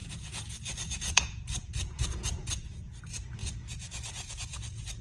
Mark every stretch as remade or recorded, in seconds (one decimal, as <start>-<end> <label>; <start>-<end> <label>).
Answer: 0.0-3.0 remade; 3.0-3.4 recorded; 3.4-5.0 remade